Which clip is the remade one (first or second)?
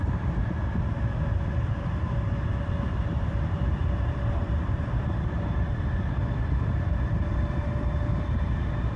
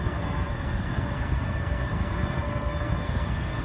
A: second